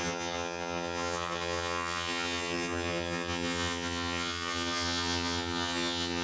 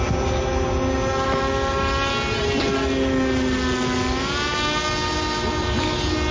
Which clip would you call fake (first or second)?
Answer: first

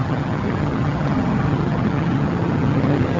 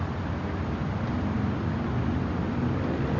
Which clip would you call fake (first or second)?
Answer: first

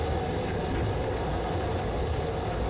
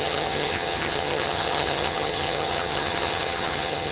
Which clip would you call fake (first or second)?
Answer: second